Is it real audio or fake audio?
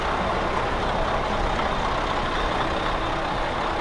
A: real